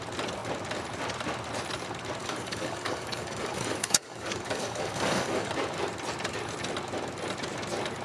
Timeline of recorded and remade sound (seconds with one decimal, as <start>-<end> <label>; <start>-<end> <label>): 0.0-2.2 recorded; 2.2-5.5 remade; 5.5-8.0 recorded